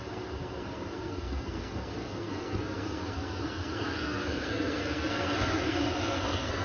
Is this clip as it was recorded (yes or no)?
no